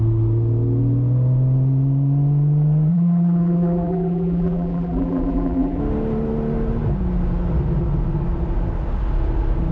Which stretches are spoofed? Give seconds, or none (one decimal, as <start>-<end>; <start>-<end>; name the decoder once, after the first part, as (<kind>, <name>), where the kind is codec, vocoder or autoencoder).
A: 2.9-5.8 (vocoder, BigVGAN v2)